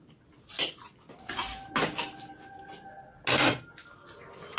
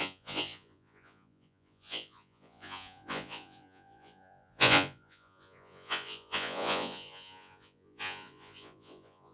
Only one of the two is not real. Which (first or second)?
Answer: second